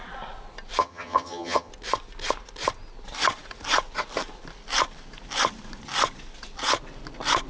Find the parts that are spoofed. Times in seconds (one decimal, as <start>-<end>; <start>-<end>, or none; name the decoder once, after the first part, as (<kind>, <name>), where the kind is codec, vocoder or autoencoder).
0.8-1.7 (vocoder, HiFi-GAN)